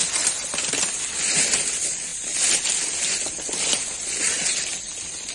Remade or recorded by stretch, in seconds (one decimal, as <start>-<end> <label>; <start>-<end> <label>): 0.0-5.3 recorded